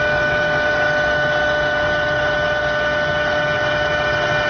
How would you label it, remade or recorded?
recorded